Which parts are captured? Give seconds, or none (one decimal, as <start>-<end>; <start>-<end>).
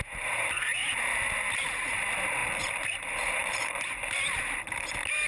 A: none